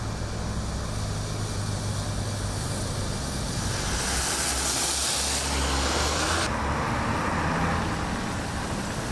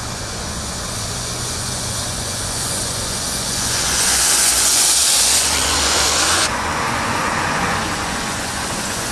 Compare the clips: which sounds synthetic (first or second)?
second